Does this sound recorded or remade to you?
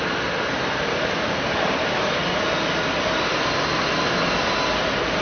recorded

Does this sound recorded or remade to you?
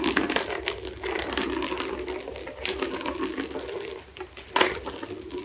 recorded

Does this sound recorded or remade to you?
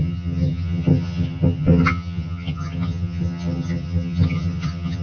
remade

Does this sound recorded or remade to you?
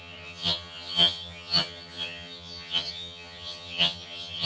remade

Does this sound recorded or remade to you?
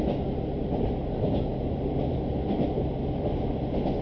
recorded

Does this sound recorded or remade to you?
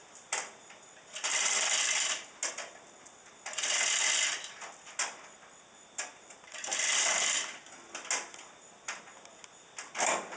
recorded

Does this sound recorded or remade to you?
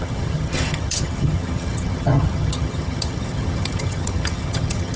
remade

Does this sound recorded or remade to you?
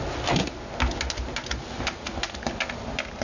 recorded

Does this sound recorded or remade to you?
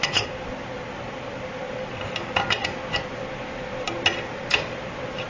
recorded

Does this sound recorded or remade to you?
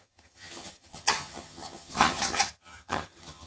remade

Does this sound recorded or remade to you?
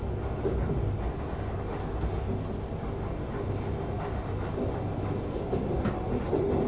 recorded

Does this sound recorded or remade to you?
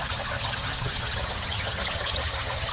remade